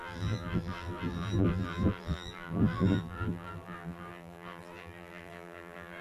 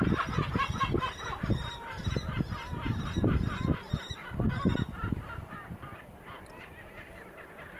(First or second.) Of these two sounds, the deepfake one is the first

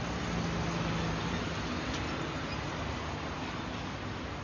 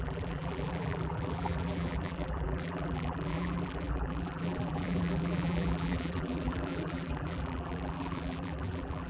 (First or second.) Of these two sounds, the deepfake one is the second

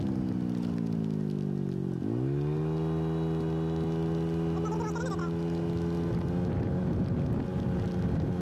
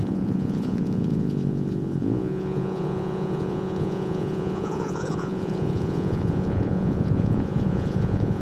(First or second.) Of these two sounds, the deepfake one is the second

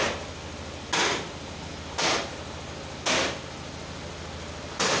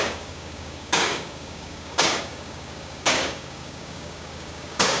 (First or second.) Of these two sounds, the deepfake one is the second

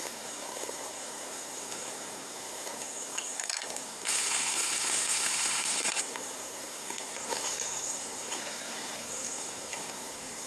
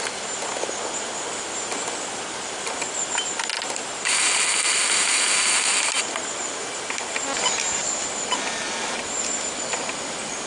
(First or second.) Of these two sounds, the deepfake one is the first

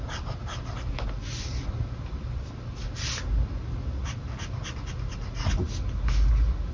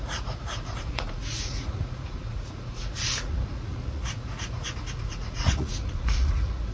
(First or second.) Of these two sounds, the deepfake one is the second